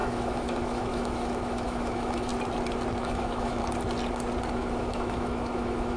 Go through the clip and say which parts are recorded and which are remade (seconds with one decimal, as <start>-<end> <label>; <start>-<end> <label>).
0.0-2.3 remade; 2.3-3.0 recorded; 3.0-3.6 remade; 3.6-4.5 recorded; 4.5-6.0 remade